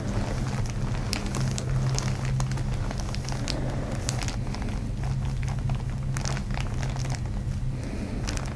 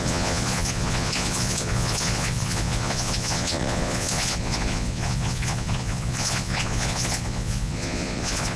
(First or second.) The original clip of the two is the first